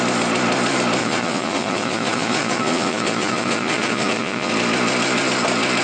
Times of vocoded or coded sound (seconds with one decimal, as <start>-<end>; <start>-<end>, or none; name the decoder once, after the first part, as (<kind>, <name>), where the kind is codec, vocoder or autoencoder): 1.0-4.5 (vocoder, Vocos)